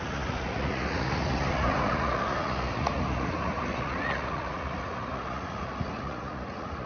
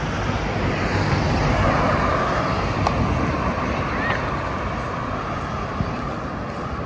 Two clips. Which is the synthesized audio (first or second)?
first